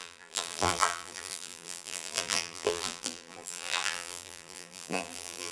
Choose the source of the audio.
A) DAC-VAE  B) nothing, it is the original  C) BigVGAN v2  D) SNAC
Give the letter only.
C